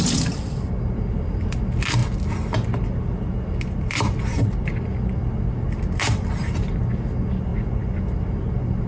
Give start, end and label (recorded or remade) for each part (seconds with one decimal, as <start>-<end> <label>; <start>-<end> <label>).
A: 0.0-8.9 recorded